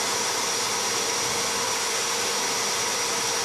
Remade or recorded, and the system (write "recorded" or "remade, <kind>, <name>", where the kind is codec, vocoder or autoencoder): recorded